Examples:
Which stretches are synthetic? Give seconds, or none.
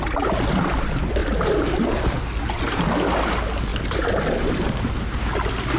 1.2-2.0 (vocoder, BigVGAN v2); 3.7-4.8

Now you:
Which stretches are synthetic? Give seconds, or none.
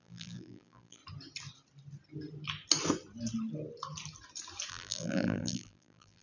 0.0-1.0 (vocoder, BigVGAN v2); 4.7-6.2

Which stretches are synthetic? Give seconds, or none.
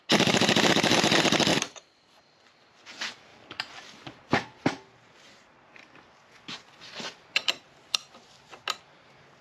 1.5-2.2 (vocoder, BigVGAN v2); 3.3-5.8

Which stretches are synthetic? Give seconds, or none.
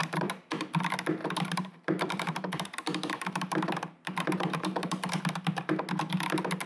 0.0-0.5 (vocoder, BigVGAN v2); 1.2-5.2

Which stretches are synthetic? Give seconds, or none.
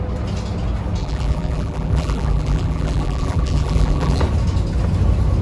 1.0-4.2 (vocoder, BigVGAN v2)